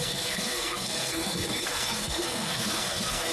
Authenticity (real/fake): fake